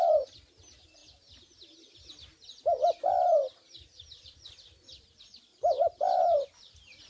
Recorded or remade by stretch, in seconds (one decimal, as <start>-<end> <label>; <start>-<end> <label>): 0.0-1.0 remade; 1.0-3.0 recorded; 3.0-7.1 remade